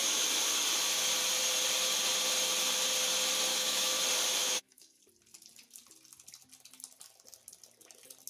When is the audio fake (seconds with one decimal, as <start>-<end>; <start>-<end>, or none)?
3.5-4.0; 4.4-5.0